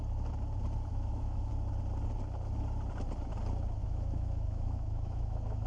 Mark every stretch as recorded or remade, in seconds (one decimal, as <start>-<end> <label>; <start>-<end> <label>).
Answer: 0.0-0.9 recorded; 0.9-1.5 remade; 1.5-3.8 recorded; 3.8-5.7 remade